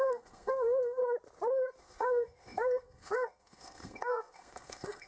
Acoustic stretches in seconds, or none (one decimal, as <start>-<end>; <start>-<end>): 1.0-1.8